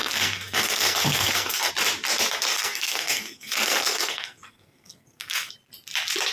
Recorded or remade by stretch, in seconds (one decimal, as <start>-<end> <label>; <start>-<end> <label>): 0.0-1.7 remade; 1.7-2.5 recorded; 2.5-5.5 remade; 5.5-6.3 recorded